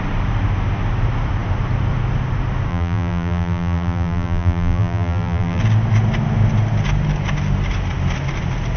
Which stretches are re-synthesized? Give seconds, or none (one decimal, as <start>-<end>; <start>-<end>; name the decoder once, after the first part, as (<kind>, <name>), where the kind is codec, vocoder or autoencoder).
2.7-5.6 (vocoder, BigVGAN v2)